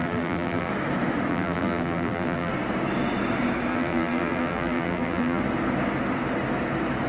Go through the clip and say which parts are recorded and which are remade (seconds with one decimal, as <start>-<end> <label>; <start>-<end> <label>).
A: 0.0-0.7 remade; 0.7-1.3 recorded; 1.3-2.5 remade; 2.5-3.7 recorded; 3.7-5.4 remade; 5.4-7.1 recorded